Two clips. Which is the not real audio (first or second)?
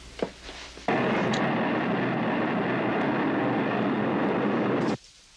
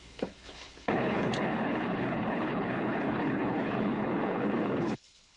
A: second